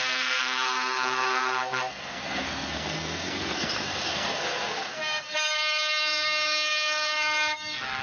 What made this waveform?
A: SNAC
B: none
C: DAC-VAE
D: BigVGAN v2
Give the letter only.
A